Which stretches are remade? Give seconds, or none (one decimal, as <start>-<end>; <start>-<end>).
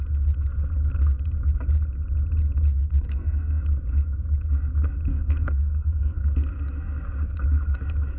2.8-3.6; 5.1-6.3